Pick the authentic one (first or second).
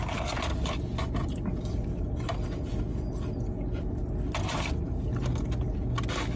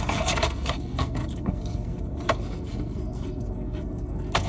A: first